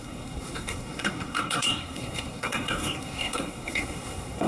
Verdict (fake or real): fake